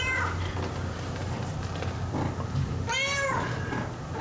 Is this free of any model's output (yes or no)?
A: yes